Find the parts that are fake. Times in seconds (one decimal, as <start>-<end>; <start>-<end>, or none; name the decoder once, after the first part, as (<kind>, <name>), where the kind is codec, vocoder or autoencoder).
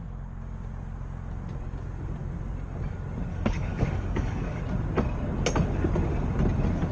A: 3.3-4.6 (codec, DAC)